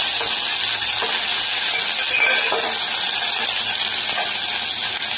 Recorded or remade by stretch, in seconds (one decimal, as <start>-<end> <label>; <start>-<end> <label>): 0.0-5.2 recorded